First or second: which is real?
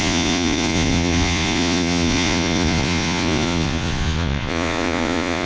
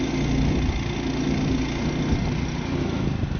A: second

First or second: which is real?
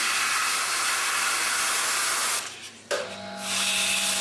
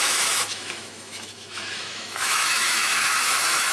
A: first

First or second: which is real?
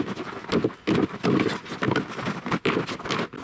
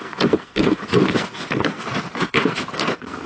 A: first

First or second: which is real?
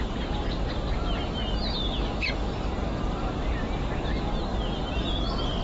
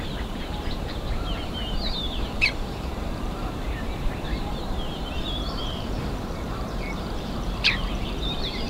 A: first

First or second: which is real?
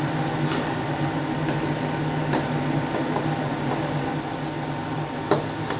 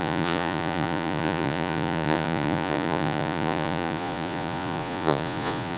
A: first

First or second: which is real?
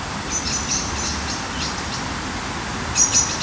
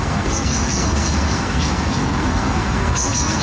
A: first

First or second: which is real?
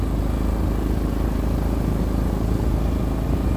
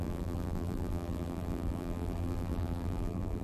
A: first